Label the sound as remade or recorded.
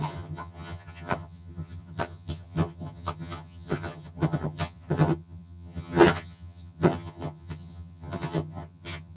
remade